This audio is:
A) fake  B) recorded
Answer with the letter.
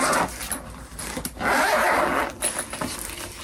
B